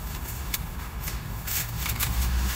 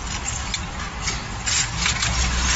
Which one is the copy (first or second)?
first